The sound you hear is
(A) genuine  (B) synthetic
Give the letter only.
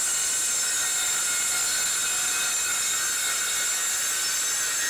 A